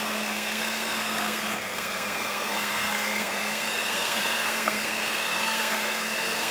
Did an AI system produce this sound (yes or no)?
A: yes